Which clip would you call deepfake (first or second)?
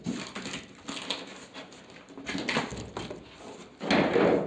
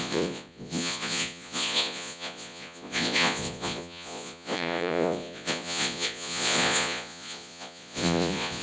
second